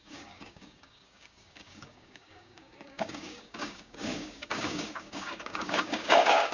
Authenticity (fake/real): fake